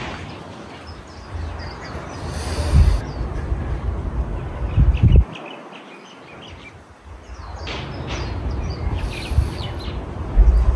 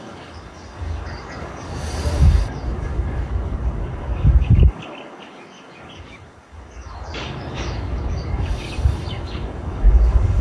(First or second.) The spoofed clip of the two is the second